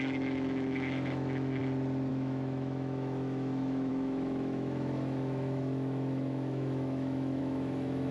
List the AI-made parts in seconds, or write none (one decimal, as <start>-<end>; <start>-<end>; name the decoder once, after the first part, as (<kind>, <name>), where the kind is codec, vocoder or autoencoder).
0.0-1.6 (autoencoder, DAC-VAE); 2.1-8.1